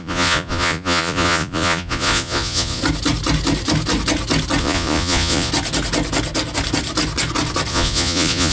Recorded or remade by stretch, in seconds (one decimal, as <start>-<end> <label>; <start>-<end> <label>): 0.0-2.8 remade; 2.8-4.6 recorded; 4.6-5.5 remade; 5.5-7.7 recorded; 7.7-8.5 remade